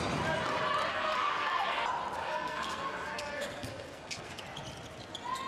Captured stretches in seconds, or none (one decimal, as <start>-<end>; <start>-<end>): 0.0-0.9; 1.8-2.2; 4.4-5.5